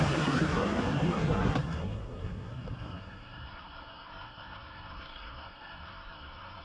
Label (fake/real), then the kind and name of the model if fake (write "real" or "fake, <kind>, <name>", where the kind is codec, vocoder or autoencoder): fake, codec, SNAC